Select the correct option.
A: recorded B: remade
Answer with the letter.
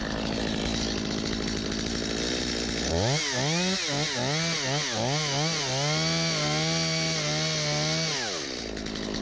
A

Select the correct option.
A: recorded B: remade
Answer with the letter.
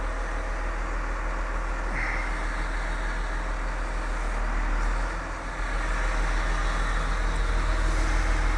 A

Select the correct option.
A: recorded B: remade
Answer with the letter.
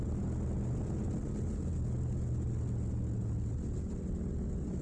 A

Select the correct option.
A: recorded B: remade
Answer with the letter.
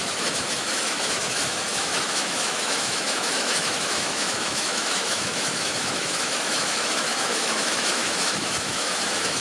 B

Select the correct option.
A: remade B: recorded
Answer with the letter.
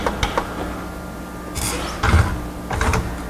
B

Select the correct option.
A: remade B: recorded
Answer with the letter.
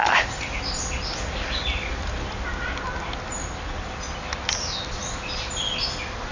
B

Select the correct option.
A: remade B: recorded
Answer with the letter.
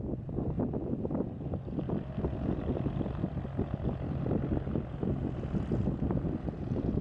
B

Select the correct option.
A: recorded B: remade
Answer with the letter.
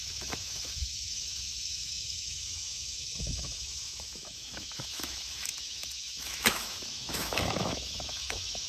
B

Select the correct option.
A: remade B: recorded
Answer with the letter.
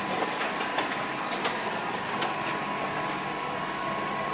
B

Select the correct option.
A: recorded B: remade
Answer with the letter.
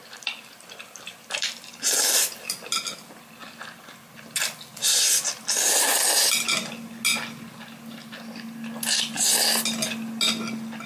A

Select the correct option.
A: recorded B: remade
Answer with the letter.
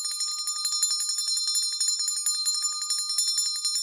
A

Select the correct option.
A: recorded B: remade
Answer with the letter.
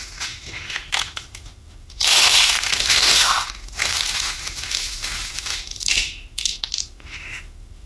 B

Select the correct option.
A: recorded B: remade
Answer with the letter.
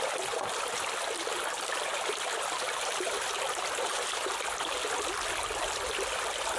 A